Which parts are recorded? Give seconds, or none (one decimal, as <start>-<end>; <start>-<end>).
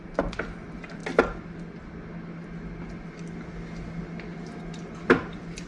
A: 0.0-5.7